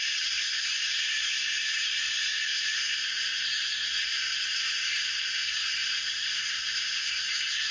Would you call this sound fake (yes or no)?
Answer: yes